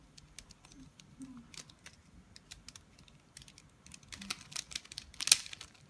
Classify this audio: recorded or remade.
recorded